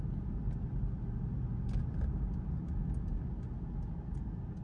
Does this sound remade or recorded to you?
recorded